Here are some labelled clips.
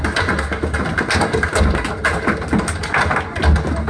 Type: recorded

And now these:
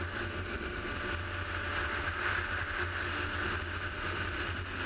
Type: recorded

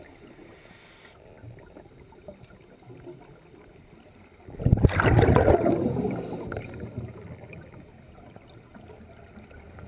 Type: recorded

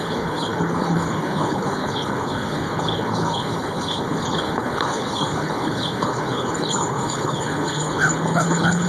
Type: remade